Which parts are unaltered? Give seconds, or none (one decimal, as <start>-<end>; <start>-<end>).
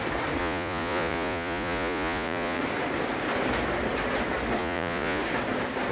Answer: 0.0-0.4; 2.6-4.6; 5.2-5.9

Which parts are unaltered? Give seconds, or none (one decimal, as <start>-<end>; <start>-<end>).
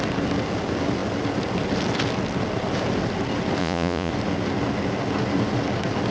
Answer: 0.0-3.6; 4.1-6.1